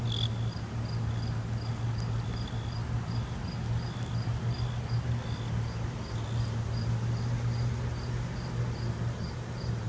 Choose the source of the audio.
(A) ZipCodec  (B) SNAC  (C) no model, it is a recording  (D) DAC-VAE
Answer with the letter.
C